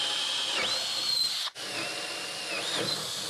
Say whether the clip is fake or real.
real